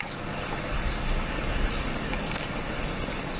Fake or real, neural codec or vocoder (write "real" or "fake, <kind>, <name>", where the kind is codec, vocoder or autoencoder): fake, codec, DAC